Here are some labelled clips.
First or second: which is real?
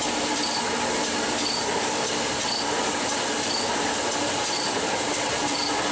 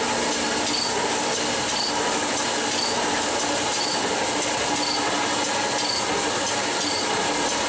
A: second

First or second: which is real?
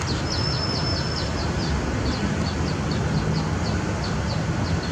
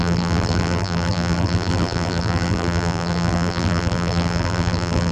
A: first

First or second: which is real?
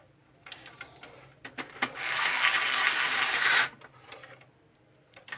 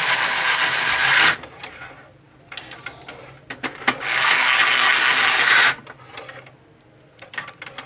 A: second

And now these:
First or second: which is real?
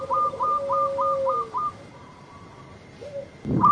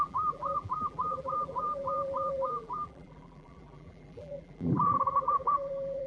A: first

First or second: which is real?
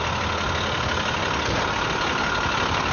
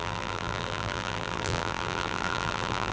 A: first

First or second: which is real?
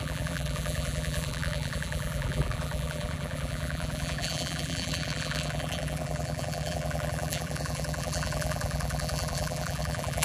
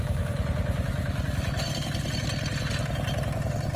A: second